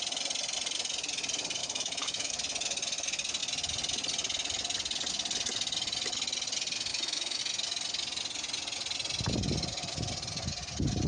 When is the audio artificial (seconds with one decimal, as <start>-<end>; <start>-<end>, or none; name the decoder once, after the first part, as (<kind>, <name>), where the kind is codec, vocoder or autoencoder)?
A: 1.6-2.3 (autoencoder, DAC-VAE); 6.9-7.4